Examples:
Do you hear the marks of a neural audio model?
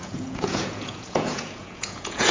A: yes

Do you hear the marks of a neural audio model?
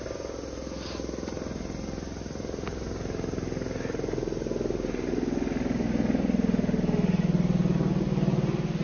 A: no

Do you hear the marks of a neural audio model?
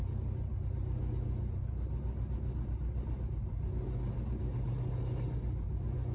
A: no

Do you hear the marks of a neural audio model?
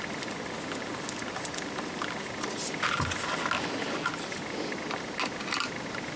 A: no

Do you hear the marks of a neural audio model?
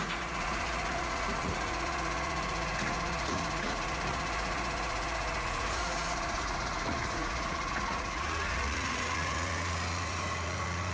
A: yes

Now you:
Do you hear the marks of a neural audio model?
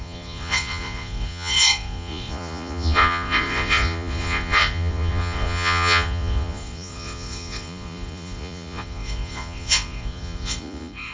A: yes